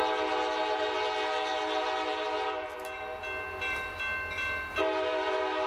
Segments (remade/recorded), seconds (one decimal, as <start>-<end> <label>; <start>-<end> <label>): 0.0-5.7 recorded